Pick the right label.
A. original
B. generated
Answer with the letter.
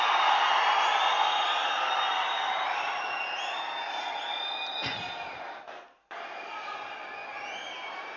A